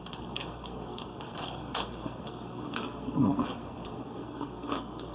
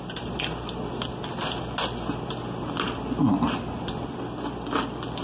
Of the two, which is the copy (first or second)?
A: first